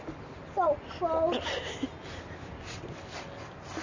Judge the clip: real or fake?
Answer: real